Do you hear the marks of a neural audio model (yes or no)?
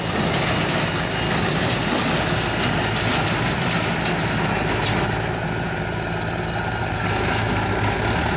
no